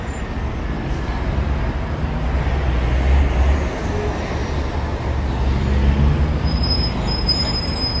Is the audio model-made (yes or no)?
no